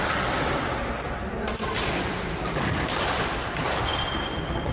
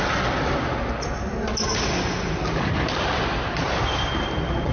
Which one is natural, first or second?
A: second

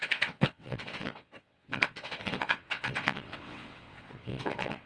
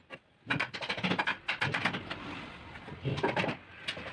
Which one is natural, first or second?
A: second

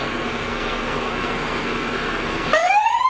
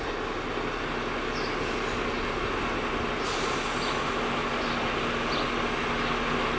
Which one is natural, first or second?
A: second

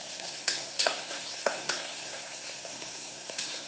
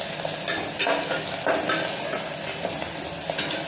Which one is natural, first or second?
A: second